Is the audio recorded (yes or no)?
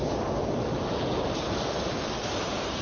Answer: yes